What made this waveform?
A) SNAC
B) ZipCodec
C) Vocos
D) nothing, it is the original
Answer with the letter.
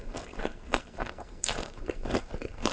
A